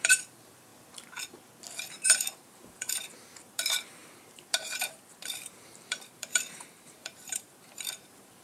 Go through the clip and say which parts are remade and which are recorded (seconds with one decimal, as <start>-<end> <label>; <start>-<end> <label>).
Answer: 0.0-0.7 remade; 0.7-1.9 recorded; 1.9-8.4 remade